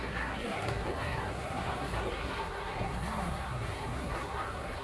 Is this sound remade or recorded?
remade